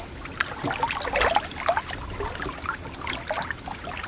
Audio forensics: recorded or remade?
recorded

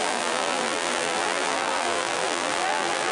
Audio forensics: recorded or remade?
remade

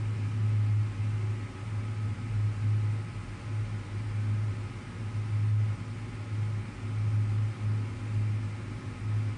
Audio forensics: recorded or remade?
recorded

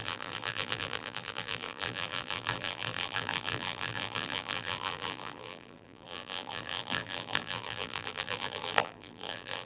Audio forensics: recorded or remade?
remade